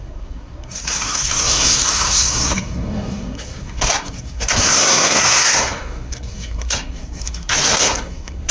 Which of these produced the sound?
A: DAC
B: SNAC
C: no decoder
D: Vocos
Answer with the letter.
B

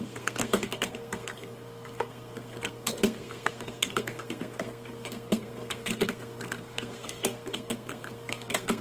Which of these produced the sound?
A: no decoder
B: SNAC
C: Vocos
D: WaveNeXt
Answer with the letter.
B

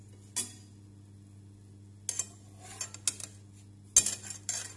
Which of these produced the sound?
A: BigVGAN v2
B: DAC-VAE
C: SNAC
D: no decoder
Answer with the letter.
D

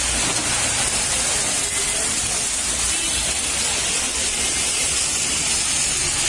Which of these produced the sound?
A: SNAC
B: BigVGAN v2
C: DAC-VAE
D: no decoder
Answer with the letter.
D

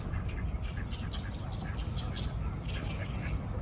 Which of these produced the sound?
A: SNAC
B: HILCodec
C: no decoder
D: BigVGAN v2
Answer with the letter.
C